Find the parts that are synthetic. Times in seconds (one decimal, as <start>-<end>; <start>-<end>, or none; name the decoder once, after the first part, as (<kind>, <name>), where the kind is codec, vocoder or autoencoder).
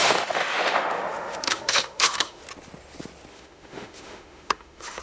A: 0.0-2.4 (autoencoder, DAC-VAE); 3.3-5.0